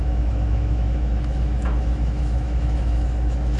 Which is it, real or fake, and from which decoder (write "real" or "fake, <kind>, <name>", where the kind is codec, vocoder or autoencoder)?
fake, autoencoder, DAC-VAE